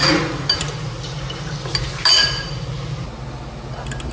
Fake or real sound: real